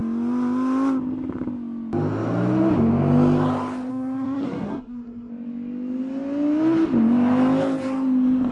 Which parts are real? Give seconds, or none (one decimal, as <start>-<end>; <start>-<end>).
0.0-3.9; 5.3-8.5